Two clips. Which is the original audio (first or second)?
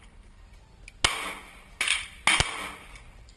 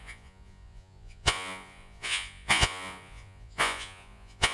first